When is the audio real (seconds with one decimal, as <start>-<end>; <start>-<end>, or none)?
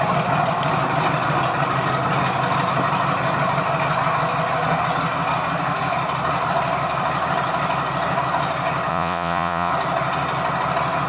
0.0-8.9; 9.7-11.1